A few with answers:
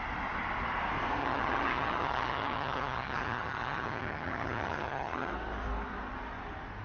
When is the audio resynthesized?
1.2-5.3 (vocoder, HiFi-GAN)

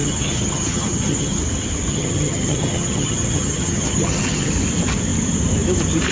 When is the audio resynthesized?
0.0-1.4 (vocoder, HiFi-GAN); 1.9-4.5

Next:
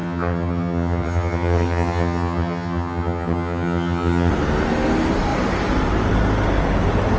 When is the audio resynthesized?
0.0-4.3 (vocoder, HiFi-GAN)

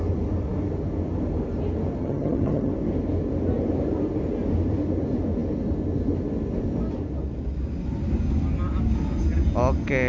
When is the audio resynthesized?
2.0-2.7 (vocoder, HiFi-GAN)

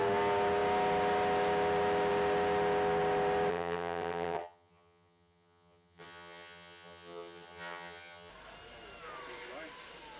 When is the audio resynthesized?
3.5-8.3 (vocoder, HiFi-GAN)